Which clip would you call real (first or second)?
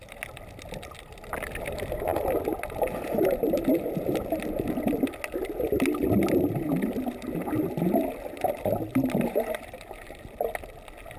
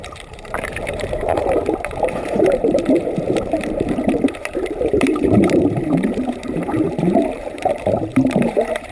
first